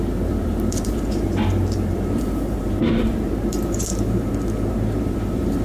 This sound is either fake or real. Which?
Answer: fake